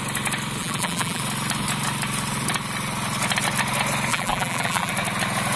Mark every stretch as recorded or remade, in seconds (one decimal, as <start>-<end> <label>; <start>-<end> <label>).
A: 0.0-0.6 recorded; 0.6-1.2 remade; 1.2-4.1 recorded; 4.1-4.9 remade; 4.9-5.6 recorded